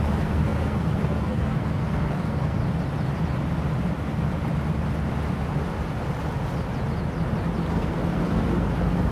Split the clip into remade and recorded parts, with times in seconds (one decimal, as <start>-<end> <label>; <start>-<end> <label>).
0.0-2.6 remade; 2.6-7.7 recorded; 7.7-9.1 remade